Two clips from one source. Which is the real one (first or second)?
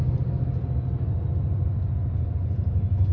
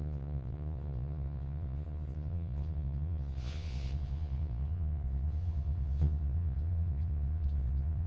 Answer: first